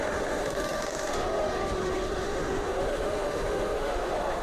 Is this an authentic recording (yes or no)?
no